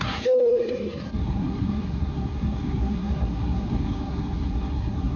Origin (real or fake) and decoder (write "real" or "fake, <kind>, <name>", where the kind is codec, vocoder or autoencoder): fake, codec, SNAC